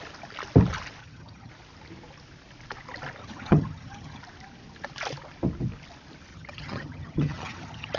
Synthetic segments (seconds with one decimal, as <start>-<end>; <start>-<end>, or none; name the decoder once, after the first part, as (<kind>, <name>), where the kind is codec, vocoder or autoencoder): 1.0-1.5 (vocoder, HiFi-GAN); 3.2-4.2; 6.3-8.0